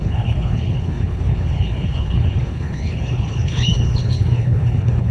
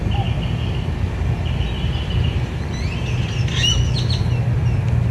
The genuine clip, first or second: second